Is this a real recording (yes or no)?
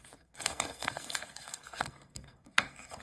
no